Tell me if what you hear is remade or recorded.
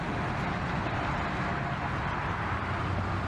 recorded